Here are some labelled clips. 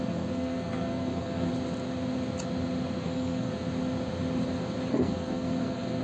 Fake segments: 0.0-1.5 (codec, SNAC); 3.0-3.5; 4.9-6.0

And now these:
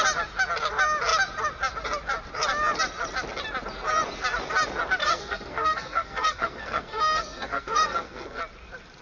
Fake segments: 5.0-8.4 (codec, SNAC)

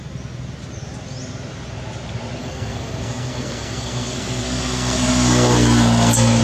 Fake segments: 2.4-6.4 (codec, SNAC)